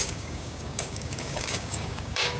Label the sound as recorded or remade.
remade